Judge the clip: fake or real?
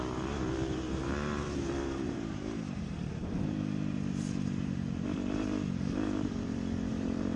fake